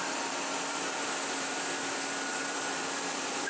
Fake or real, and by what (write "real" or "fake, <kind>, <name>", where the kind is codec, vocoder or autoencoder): fake, vocoder, BigVGAN v2